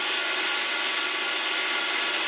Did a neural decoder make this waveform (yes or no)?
no